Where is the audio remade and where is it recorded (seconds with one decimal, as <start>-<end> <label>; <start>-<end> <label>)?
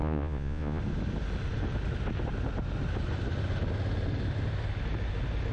0.0-0.8 remade; 0.8-5.5 recorded